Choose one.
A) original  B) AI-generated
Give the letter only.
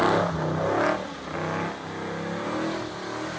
A